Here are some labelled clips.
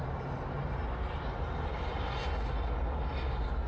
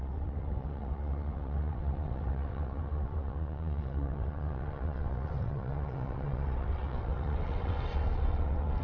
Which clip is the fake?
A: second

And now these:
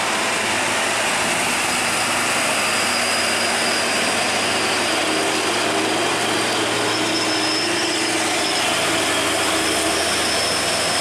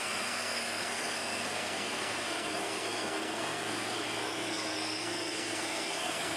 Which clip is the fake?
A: second